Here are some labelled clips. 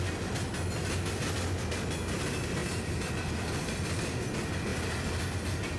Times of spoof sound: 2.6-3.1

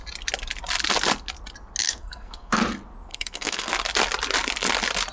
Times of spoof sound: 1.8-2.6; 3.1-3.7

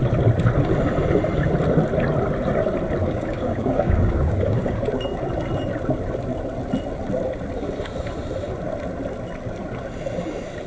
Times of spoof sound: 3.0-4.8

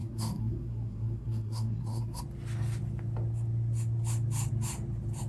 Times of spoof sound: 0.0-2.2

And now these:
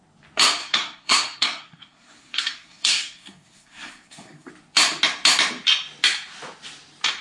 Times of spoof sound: 0.6-4.5

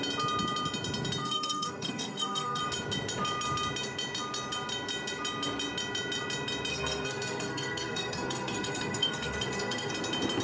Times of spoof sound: 1.2-2.6; 6.7-9.9

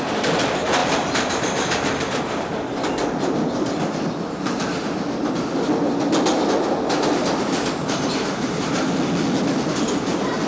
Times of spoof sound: 7.8-8.8